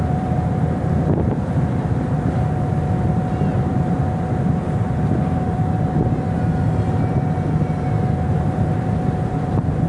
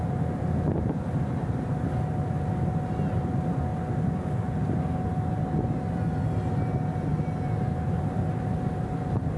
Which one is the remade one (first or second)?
first